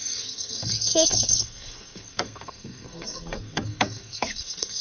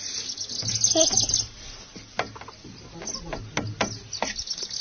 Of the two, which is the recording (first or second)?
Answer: second